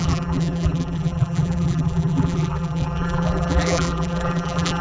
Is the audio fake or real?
fake